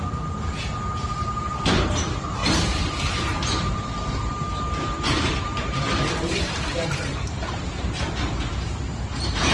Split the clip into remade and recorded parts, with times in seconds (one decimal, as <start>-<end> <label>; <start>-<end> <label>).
0.0-2.4 recorded; 2.4-7.5 remade; 7.5-9.5 recorded